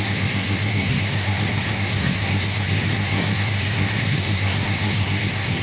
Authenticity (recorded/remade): remade